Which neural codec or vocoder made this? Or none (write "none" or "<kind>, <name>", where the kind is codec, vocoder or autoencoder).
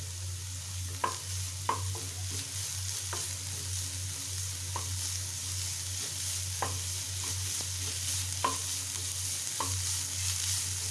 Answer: none